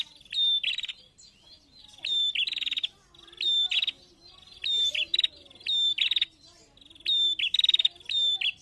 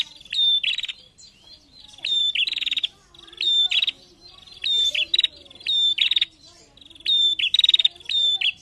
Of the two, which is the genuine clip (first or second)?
first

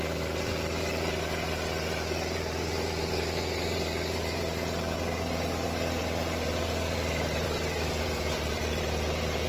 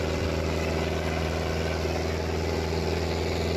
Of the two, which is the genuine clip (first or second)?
second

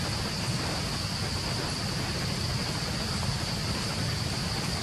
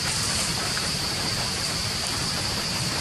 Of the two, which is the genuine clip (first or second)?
first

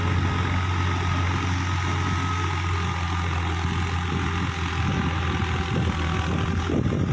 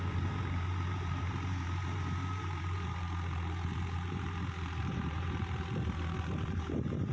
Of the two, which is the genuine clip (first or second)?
first